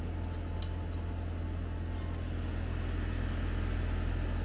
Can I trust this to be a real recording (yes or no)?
yes